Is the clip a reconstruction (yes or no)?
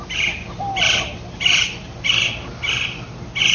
no